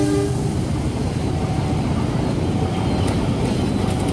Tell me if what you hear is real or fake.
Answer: real